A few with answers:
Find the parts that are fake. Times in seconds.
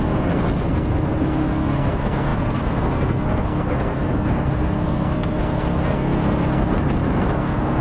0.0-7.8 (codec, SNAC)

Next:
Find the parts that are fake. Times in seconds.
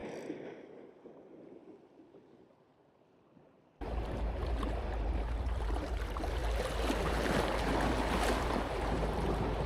1.6-6.4 (vocoder, BigVGAN v2); 7.0-9.7